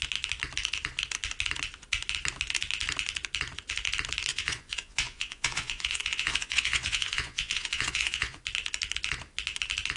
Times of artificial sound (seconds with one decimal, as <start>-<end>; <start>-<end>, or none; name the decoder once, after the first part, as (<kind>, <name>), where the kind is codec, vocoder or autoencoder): 4.3-8.4 (vocoder, Vocos)